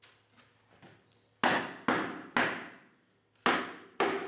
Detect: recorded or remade recorded